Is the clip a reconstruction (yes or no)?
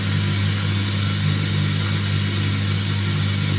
no